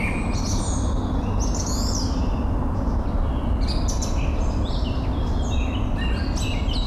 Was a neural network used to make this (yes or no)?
no